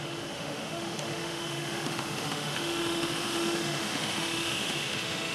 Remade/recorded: remade